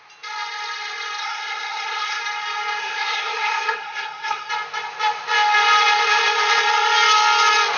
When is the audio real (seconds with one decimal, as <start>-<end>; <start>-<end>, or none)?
0.0-1.2; 2.2-2.8; 4.5-7.8